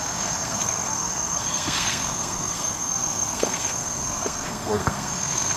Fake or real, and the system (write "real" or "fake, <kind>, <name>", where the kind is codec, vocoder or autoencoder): fake, codec, SNAC